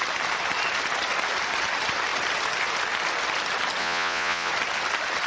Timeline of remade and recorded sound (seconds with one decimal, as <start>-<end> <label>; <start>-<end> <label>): 0.0-3.8 recorded; 3.8-4.5 remade; 4.5-5.3 recorded